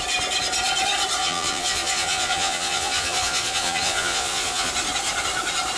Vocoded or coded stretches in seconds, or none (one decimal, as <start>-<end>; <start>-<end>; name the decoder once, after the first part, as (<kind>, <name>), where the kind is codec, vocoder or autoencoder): 1.2-4.7 (vocoder, Vocos)

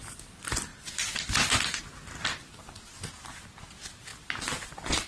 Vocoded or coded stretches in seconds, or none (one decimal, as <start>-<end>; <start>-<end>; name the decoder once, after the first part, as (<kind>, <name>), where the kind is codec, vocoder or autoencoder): none

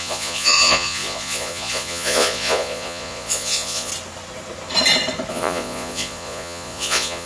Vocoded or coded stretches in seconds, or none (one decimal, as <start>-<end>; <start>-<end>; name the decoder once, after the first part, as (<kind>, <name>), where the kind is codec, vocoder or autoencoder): 0.0-3.9 (vocoder, Vocos); 5.3-7.3

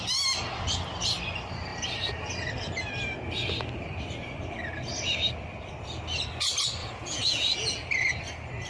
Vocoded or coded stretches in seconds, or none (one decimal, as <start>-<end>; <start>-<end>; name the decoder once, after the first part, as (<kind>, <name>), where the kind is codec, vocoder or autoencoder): 6.8-8.1 (vocoder, Vocos)

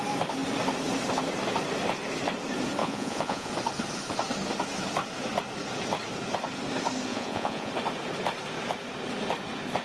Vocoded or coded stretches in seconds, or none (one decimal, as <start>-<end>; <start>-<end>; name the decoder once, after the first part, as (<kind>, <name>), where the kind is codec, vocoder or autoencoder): 2.8-3.5 (vocoder, Vocos); 7.1-7.7

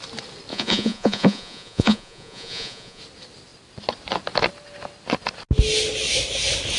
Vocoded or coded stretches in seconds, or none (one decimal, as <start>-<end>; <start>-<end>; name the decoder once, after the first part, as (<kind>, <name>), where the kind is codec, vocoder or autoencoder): 0.5-3.0 (vocoder, Vocos)

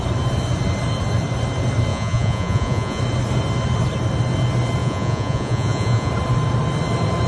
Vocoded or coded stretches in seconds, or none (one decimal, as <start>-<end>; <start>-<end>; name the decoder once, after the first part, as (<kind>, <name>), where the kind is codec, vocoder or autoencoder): 1.9-3.0 (vocoder, Vocos); 4.8-6.1